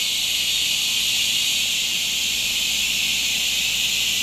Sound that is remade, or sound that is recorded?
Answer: recorded